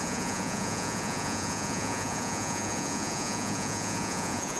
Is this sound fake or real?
fake